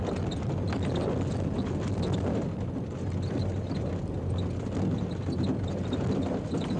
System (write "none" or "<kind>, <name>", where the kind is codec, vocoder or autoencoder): none